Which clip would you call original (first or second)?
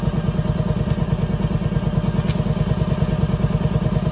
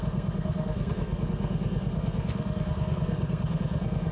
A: first